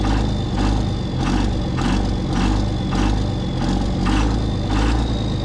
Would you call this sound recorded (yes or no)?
yes